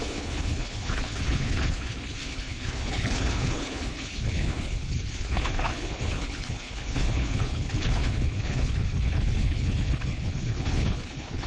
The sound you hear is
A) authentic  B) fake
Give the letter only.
B